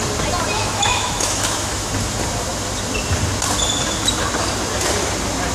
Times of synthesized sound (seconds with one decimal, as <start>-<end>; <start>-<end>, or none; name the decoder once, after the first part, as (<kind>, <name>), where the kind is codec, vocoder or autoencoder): 0.6-1.9 (autoencoder, DAC-VAE)